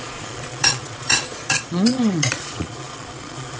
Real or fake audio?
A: fake